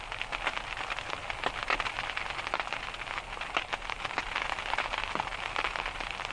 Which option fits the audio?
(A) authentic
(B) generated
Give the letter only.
A